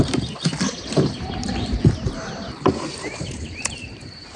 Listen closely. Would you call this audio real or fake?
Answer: fake